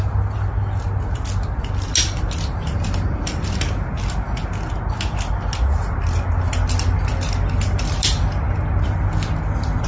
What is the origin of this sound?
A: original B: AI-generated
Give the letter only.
A